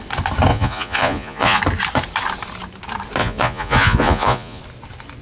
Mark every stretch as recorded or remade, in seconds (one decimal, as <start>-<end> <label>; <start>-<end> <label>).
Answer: 0.0-0.5 recorded; 0.5-1.6 remade; 1.6-3.2 recorded; 3.2-4.6 remade; 4.6-5.2 recorded